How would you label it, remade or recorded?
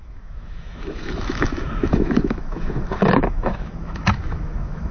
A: remade